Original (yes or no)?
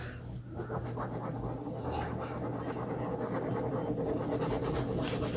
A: yes